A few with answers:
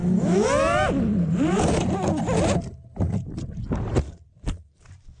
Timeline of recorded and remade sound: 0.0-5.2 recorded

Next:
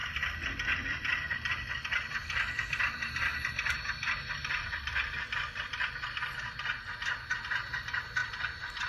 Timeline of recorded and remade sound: 0.0-1.5 remade; 1.5-2.2 recorded; 2.2-6.2 remade; 6.2-8.2 recorded; 8.2-8.9 remade

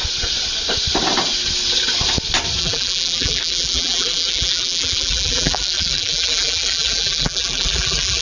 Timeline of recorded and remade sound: 0.0-2.6 recorded; 2.6-8.2 remade

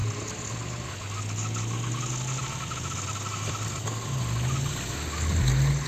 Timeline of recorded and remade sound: 0.0-5.9 recorded

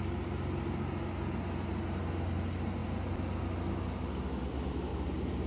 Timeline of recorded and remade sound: 0.0-4.9 recorded; 4.9-5.5 remade

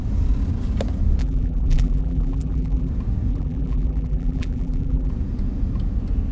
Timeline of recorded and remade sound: 0.0-1.2 recorded; 1.2-2.9 remade; 2.9-3.3 recorded; 3.3-5.1 remade; 5.1-6.3 recorded

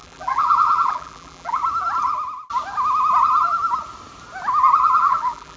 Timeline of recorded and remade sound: 0.0-1.6 remade; 1.6-5.0 recorded; 5.0-5.6 remade